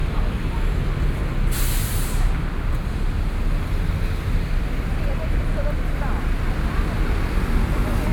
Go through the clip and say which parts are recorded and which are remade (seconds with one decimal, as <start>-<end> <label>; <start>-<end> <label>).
0.0-8.1 recorded